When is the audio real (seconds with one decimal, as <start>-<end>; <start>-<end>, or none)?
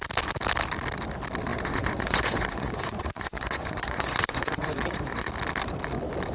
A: 0.0-1.5; 5.3-6.3